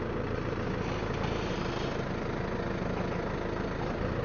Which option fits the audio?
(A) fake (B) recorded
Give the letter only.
B